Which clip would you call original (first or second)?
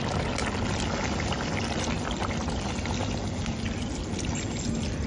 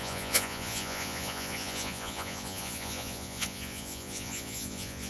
first